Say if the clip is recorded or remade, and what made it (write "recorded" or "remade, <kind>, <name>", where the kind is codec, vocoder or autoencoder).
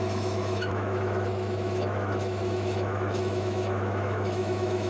remade, autoencoder, DAC-VAE